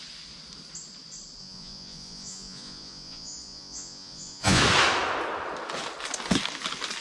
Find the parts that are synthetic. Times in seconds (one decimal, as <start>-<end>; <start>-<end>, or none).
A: 1.4-4.6